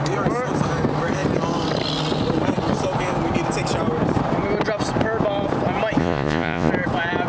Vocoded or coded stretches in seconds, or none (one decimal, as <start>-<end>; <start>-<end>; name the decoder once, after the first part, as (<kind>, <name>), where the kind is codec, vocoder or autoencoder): 6.0-6.7 (vocoder, Vocos)